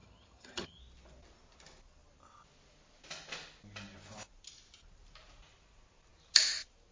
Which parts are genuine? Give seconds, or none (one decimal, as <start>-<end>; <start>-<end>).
0.8-6.9